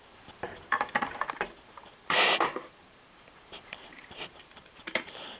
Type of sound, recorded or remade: remade